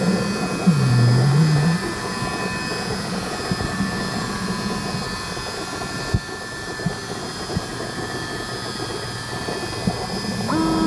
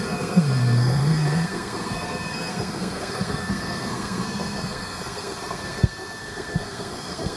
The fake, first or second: second